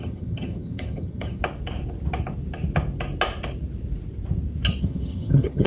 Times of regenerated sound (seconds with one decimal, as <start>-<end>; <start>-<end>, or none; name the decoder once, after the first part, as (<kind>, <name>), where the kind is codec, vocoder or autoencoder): 0.0-1.4 (vocoder, HiFi-GAN); 4.8-5.7

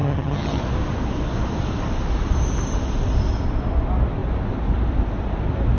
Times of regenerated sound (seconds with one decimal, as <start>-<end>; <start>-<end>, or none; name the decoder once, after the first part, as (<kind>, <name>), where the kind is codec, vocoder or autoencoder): 0.0-0.6 (vocoder, HiFi-GAN)

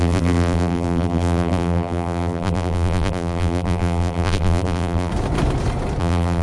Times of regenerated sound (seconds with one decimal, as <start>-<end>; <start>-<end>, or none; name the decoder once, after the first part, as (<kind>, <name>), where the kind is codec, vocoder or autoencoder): 0.0-5.1 (vocoder, BigVGAN v2); 6.0-6.4

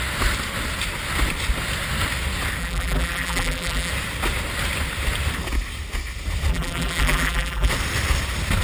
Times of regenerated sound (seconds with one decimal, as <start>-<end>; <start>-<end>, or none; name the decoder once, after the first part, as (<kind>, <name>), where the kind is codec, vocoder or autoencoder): 2.6-3.9 (vocoder, BigVGAN v2); 6.5-7.7

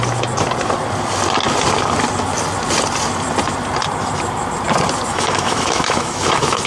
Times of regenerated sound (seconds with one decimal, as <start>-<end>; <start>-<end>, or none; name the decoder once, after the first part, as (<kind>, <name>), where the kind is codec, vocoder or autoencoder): 5.1-6.7 (autoencoder, DAC-VAE)

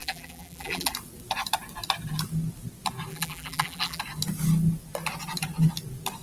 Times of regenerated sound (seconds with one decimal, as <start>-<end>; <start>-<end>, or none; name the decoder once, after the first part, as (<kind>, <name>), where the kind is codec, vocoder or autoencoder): 0.0-0.9 (vocoder, BigVGAN v2); 3.1-4.0

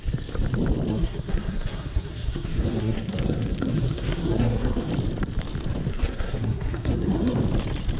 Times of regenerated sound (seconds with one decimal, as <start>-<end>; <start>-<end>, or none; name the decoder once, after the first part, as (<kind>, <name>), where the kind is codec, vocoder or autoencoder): 0.9-4.9 (codec, SNAC); 5.9-7.4